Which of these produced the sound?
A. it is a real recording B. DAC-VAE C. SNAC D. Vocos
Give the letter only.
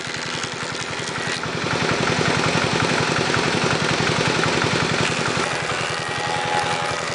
A